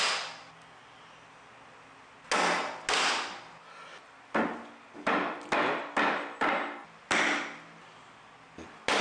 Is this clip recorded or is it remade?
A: recorded